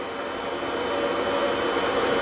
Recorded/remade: recorded